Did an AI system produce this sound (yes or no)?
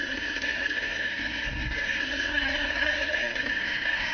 yes